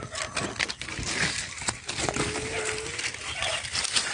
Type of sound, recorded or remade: recorded